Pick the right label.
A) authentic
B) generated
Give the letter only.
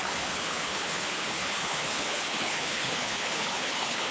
B